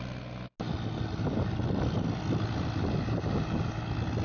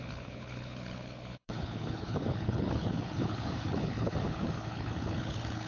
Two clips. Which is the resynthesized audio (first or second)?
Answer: second